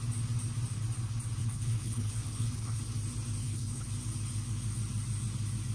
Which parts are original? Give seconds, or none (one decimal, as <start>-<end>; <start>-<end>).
0.0-1.4; 2.8-3.4; 3.9-5.7